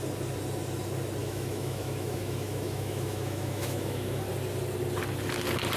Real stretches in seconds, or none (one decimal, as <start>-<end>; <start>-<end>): 0.0-1.2; 4.2-5.8